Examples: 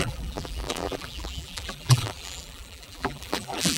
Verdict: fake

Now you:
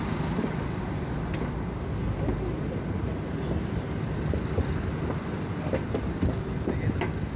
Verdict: real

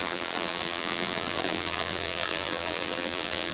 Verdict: fake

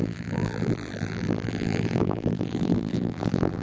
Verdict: fake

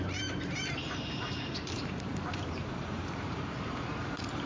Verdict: fake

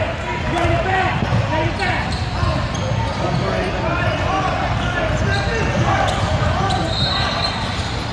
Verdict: real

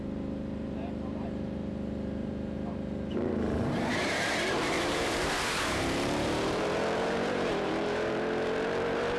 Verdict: fake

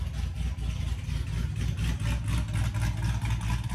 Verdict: real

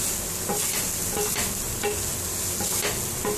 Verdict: real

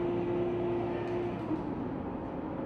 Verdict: real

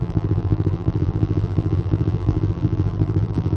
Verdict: fake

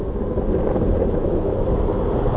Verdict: real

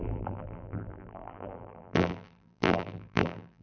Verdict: fake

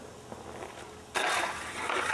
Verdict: real